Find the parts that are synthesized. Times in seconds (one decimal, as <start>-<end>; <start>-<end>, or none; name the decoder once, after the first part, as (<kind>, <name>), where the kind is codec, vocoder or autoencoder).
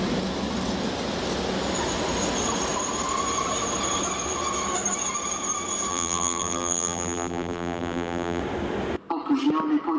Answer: 5.9-8.4 (vocoder, BigVGAN v2)